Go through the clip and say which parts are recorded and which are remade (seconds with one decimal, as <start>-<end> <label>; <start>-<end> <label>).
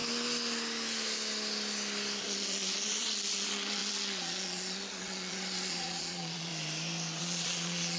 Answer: 0.0-2.2 recorded; 2.2-6.5 remade; 6.5-7.2 recorded; 7.2-8.0 remade